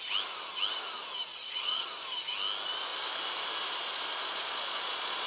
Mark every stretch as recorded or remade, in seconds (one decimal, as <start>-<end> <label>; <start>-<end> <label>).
0.0-1.3 recorded; 1.3-1.9 remade; 1.9-4.2 recorded; 4.2-5.3 remade